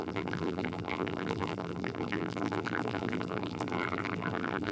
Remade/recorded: remade